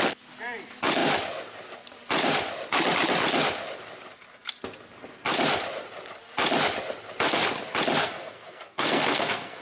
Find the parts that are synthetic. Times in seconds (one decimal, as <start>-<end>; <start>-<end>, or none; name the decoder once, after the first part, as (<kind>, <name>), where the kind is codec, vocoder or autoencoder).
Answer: 8.0-9.6 (codec, SNAC)